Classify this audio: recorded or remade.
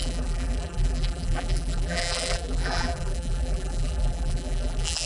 remade